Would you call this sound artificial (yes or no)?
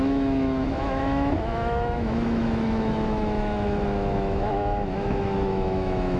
yes